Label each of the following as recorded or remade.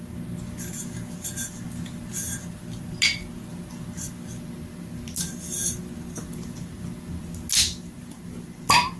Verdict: recorded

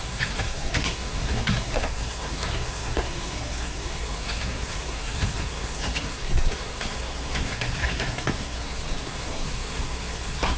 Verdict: remade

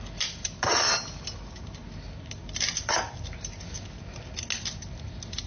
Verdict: recorded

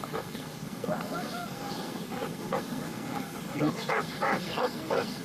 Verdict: remade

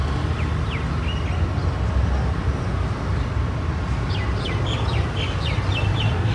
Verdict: recorded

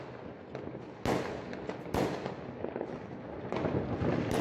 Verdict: recorded